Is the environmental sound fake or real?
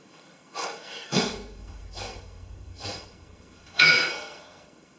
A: fake